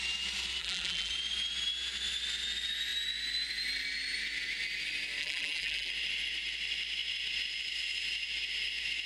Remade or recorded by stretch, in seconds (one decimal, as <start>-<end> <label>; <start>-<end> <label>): 0.0-0.6 recorded; 0.6-1.1 remade; 1.1-5.2 recorded; 5.2-5.9 remade; 5.9-9.1 recorded